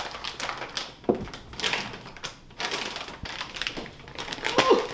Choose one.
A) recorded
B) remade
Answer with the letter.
A